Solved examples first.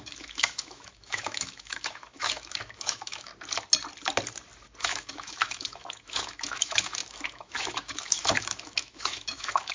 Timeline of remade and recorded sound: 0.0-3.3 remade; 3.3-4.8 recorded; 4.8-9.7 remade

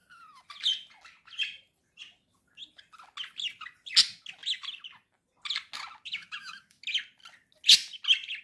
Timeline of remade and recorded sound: 0.0-6.1 recorded; 6.1-6.8 remade; 6.8-8.4 recorded

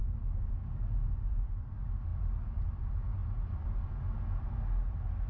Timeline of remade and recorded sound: 0.0-5.3 recorded

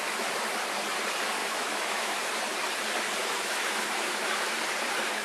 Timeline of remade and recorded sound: 0.0-1.4 recorded; 1.4-2.1 remade; 2.1-3.2 recorded; 3.2-4.4 remade; 4.4-5.2 recorded

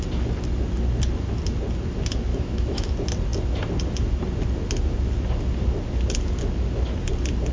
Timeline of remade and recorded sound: 0.0-2.3 recorded; 2.3-2.9 remade; 2.9-7.5 recorded

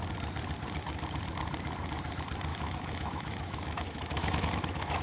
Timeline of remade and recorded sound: 0.0-2.5 recorded; 2.5-5.0 remade

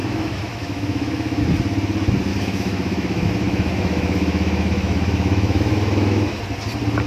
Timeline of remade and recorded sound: 0.0-1.4 remade; 1.4-2.3 recorded; 2.3-6.4 remade; 6.4-7.1 recorded

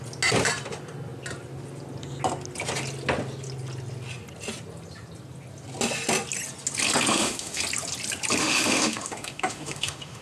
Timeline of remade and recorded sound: 0.0-7.1 recorded; 7.1-7.6 remade; 7.6-8.4 recorded; 8.4-10.2 remade